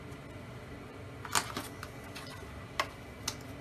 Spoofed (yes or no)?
no